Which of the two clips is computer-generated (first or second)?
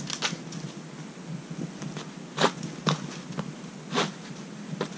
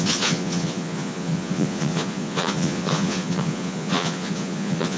second